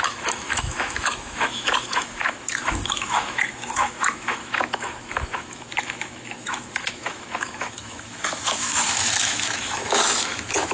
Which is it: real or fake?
fake